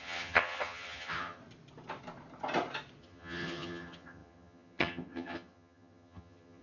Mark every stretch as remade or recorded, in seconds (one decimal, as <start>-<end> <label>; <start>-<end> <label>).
0.0-1.4 remade; 1.4-3.0 recorded; 3.0-6.6 remade